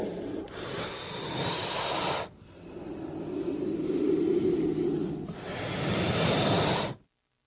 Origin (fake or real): real